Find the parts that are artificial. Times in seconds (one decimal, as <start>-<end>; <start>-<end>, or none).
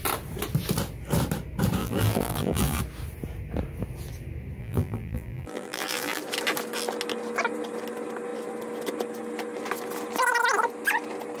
1.8-2.8; 4.6-6.2